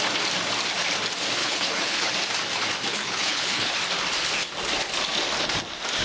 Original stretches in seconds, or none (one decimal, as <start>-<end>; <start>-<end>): 0.0-1.4; 2.1-2.9; 3.7-6.0